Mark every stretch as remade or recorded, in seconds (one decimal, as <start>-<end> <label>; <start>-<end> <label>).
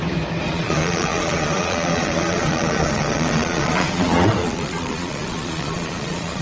0.0-0.5 recorded; 0.5-6.4 remade